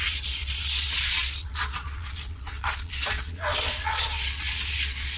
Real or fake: fake